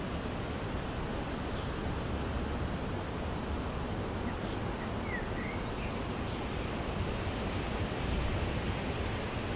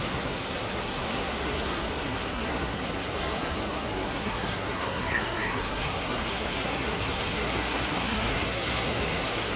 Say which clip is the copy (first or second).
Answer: second